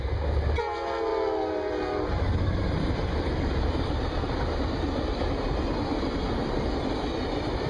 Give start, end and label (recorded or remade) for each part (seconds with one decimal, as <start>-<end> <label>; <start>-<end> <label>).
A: 0.0-7.7 recorded